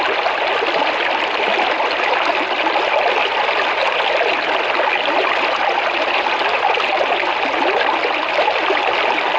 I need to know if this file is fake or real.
real